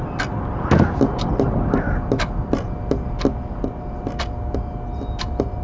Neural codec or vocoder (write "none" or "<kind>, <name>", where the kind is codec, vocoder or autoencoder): none